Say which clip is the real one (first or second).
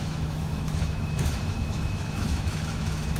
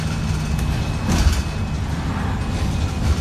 second